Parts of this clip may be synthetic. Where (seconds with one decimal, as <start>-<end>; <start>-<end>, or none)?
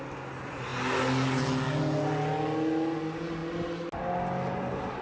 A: none